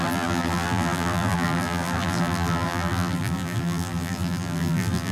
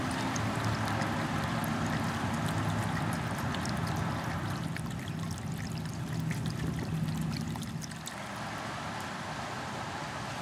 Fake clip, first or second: first